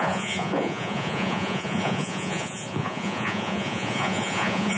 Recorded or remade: remade